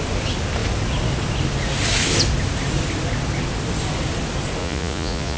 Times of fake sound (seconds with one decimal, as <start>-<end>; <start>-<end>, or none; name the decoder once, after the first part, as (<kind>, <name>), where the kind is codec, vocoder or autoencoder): 4.6-5.4 (vocoder, Vocos)